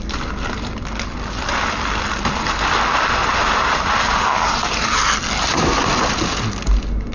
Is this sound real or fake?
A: real